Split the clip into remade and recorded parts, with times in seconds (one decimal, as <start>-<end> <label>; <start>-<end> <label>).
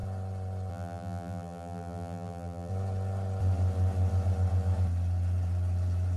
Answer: 0.0-0.7 recorded; 0.7-2.7 remade; 2.7-6.2 recorded